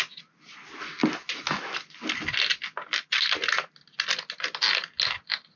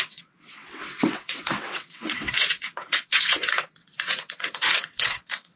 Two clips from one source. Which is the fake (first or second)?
second